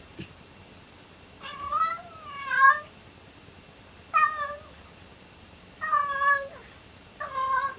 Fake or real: real